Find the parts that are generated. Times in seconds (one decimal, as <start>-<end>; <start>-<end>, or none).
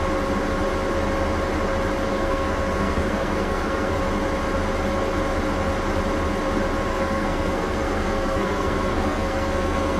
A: 2.1-4.0; 6.9-10.0